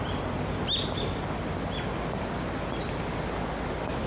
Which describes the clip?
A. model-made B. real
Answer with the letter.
B